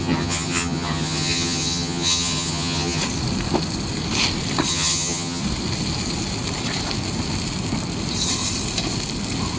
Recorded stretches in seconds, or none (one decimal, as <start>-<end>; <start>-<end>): 3.0-4.7; 5.4-9.6